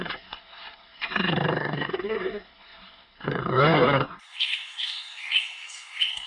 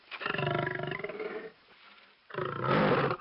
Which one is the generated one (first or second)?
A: first